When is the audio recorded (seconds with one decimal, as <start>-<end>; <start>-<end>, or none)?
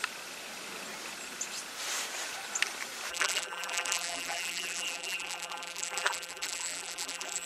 0.0-3.1